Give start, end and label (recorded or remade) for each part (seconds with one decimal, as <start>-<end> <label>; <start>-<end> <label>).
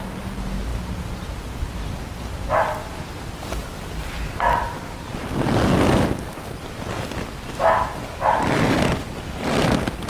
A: 0.0-10.1 recorded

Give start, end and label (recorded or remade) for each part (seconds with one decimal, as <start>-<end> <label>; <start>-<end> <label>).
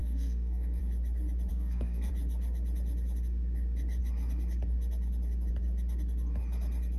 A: 0.0-0.8 remade; 0.8-1.5 recorded; 1.5-2.1 remade; 2.1-7.0 recorded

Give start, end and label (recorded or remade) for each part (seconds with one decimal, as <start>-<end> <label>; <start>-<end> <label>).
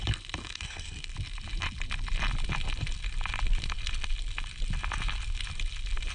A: 0.0-0.4 recorded; 0.4-1.1 remade; 1.1-6.1 recorded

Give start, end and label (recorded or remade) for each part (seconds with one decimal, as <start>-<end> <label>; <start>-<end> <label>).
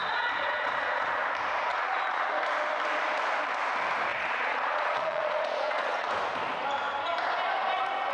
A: 0.0-1.2 remade; 1.2-1.7 recorded; 1.7-2.3 remade; 2.3-4.1 recorded; 4.1-6.1 remade; 6.1-8.1 recorded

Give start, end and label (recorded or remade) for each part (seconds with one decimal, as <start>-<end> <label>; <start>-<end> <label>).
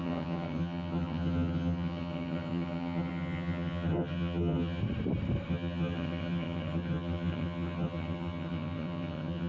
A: 0.0-4.8 remade; 4.8-5.5 recorded; 5.5-9.5 remade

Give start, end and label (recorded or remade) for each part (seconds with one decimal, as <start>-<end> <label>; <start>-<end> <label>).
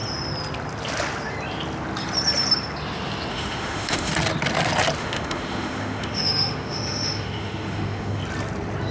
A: 0.0-3.3 recorded; 3.3-4.1 remade; 4.1-5.0 recorded; 5.0-8.2 remade; 8.2-8.9 recorded